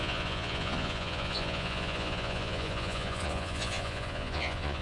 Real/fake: fake